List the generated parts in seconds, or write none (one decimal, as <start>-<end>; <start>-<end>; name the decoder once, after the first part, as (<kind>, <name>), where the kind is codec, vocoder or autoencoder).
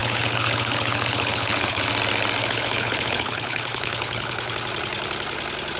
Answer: 0.0-1.8 (codec, HILCodec); 2.4-4.5